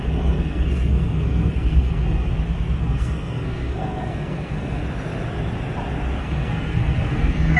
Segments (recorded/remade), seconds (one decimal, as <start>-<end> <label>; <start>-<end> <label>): 0.0-2.3 remade; 2.3-2.8 recorded; 2.8-4.8 remade; 4.8-6.2 recorded; 6.2-7.6 remade